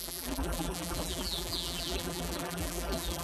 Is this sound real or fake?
fake